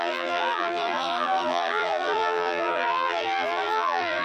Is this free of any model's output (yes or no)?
no